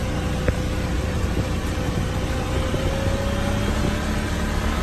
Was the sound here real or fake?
real